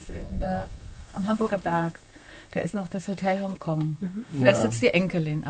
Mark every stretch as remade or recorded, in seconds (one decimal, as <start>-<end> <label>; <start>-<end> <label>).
0.0-4.6 remade; 4.6-5.5 recorded